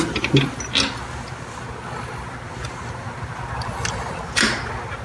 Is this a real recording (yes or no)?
yes